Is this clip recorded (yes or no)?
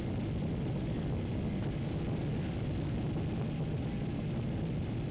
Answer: yes